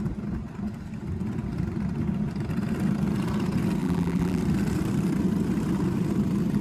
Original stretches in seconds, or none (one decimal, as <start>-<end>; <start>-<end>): 0.0-3.8; 4.4-6.6